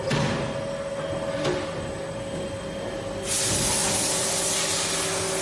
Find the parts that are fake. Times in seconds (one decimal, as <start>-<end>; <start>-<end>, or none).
none